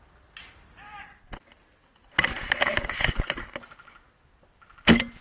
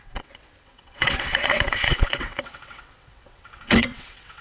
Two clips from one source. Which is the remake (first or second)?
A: second